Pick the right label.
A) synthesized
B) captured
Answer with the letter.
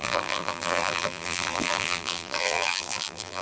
A